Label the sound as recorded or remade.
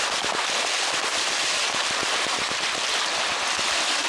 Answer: recorded